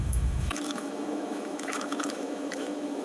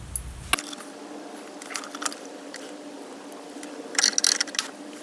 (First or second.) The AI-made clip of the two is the first